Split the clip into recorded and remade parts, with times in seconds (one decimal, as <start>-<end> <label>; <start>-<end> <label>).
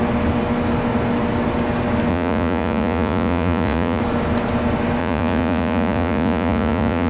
0.0-2.1 recorded; 2.1-4.0 remade; 4.0-5.0 recorded; 5.0-7.1 remade